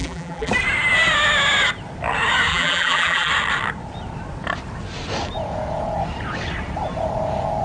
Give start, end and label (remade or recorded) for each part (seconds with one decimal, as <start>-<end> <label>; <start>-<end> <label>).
0.0-0.5 remade; 0.5-2.5 recorded; 2.5-3.3 remade; 3.3-7.6 recorded